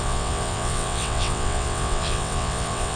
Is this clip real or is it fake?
fake